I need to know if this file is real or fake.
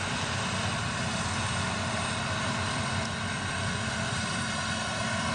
real